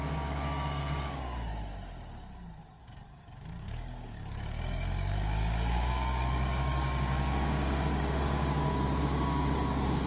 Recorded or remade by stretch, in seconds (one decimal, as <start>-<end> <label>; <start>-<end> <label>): 0.0-1.5 remade; 1.5-2.8 recorded; 2.8-10.1 remade